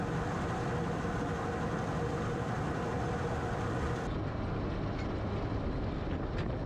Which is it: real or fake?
real